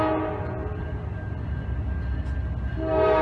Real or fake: real